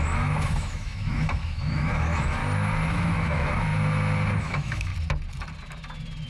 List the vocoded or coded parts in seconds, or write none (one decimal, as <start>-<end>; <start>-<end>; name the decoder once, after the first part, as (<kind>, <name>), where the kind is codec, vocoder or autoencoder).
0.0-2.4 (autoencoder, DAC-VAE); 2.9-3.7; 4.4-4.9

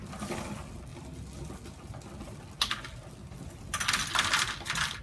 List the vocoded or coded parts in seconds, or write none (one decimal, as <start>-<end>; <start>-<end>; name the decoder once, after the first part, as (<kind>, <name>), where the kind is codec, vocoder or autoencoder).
none

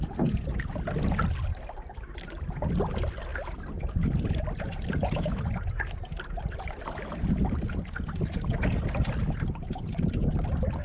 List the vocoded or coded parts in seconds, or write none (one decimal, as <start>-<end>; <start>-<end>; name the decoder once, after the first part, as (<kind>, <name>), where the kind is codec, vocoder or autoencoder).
none

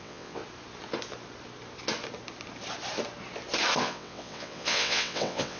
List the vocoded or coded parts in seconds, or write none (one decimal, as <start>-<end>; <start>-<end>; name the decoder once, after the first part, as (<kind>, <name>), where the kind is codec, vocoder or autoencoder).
0.0-0.4 (vocoder, WaveNeXt); 3.8-5.6

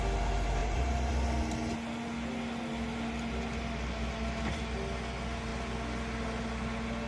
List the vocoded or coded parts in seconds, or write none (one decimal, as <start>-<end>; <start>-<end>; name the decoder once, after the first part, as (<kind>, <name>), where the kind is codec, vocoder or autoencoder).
0.6-1.1 (vocoder, BigVGAN v2)

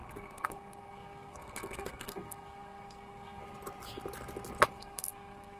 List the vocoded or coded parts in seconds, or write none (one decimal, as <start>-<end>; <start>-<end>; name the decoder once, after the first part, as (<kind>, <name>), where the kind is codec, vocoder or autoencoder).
0.0-3.4 (codec, SNAC); 4.7-5.6

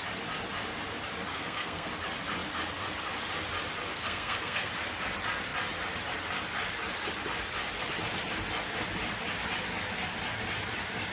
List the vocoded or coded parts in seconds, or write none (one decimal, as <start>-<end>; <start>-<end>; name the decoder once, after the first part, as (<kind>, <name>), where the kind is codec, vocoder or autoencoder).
1.3-1.9 (codec, SNAC); 3.9-4.7